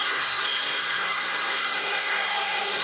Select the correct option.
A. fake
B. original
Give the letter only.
A